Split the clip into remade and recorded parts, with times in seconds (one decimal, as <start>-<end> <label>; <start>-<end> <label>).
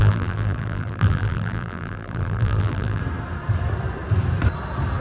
0.0-3.0 remade; 3.0-5.0 recorded